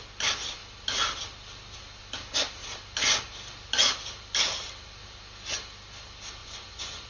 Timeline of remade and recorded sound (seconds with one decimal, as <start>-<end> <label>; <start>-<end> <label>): 0.0-6.4 recorded; 6.4-7.1 remade